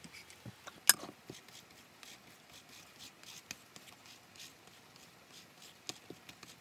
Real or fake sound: real